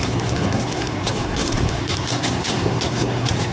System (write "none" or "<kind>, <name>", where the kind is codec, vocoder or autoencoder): codec, SNAC